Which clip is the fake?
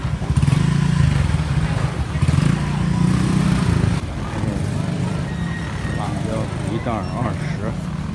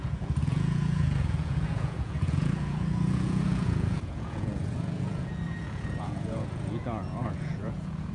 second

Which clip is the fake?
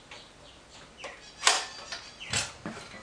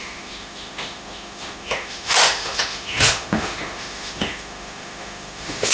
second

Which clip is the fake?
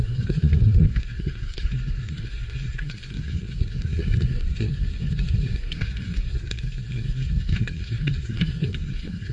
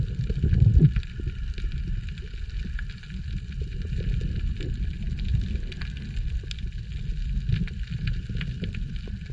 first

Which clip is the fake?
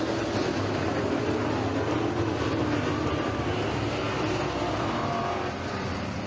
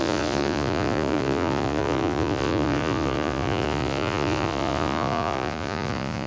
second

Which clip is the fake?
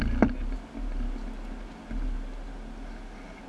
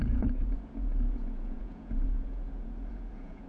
second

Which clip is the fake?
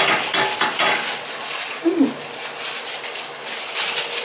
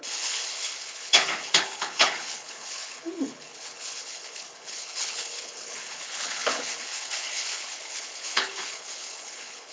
second